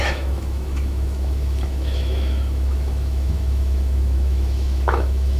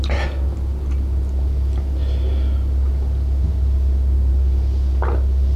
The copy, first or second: first